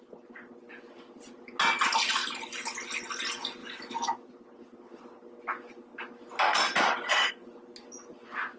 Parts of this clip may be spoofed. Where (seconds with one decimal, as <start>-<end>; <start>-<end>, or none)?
3.6-4.3